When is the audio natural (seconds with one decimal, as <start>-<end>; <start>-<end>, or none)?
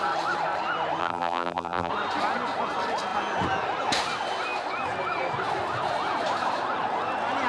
0.0-1.0; 1.9-7.5